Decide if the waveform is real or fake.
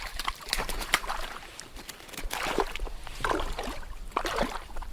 fake